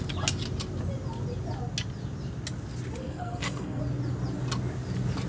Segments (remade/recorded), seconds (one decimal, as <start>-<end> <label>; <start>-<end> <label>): 0.0-3.0 recorded; 3.0-3.8 remade; 3.8-5.3 recorded